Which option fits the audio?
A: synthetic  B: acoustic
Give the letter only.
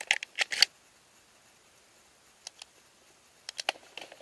B